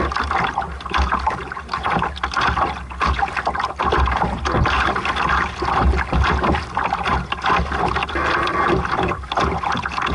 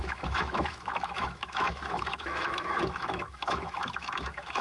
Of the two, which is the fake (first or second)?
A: second